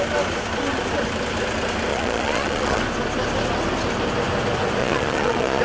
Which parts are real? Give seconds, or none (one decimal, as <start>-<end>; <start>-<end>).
0.0-1.9; 2.8-4.8